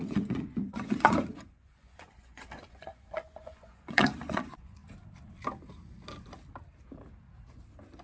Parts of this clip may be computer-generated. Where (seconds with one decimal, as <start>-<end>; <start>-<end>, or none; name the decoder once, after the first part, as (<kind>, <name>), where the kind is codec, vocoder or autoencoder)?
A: 0.0-4.8 (vocoder, Vocos)